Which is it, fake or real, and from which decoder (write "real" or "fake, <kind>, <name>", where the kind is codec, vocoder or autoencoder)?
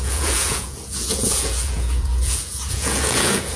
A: fake, vocoder, Vocos